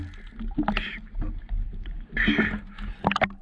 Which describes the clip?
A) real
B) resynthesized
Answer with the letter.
A